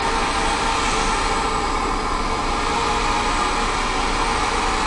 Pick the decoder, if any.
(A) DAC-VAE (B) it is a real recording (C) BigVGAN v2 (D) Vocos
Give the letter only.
B